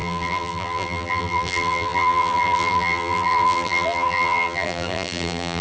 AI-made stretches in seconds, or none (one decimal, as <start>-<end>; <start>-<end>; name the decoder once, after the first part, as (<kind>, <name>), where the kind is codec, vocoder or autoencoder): 0.0-5.6 (vocoder, BigVGAN v2)